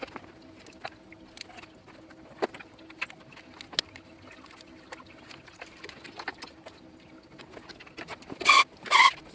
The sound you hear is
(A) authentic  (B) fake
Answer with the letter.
A